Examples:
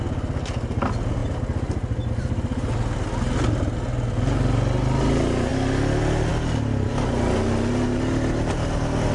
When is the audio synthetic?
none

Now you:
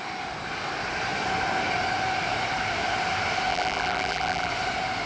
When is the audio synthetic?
3.5-4.5 (vocoder, BigVGAN v2)

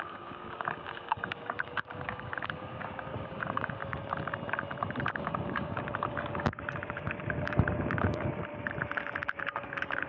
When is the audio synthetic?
0.0-3.8 (codec, DAC); 5.1-8.5; 9.4-10.1

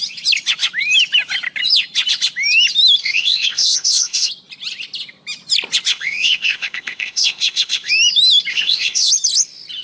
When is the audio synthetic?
3.0-4.3 (codec, ZipCodec); 5.9-7.9; 8.5-9.1